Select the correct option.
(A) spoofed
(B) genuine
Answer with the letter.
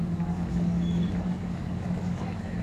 A